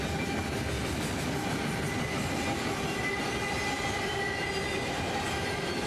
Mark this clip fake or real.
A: real